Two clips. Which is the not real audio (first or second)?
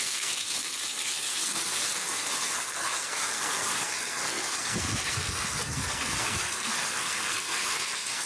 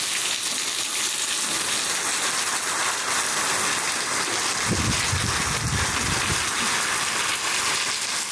first